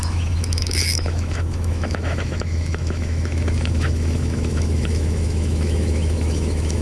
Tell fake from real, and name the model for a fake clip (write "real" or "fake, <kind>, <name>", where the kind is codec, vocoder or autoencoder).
fake, autoencoder, DAC-VAE